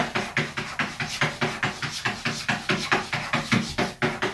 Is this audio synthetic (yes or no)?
no